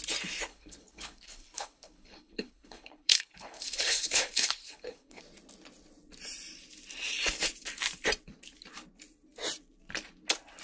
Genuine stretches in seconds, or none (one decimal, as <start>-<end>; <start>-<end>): 0.0-0.5; 5.2-10.6